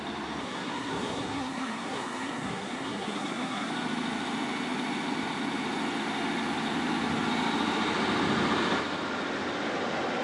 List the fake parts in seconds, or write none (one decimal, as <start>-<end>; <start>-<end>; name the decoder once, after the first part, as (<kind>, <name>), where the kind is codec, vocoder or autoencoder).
0.4-3.7 (codec, SNAC)